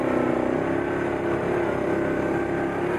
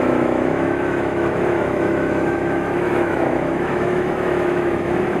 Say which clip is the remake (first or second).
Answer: second